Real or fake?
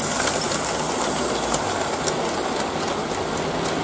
real